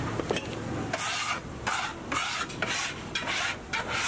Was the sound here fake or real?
real